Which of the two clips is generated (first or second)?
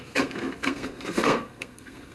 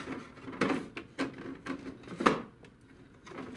first